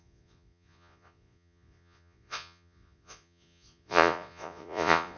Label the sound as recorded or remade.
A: remade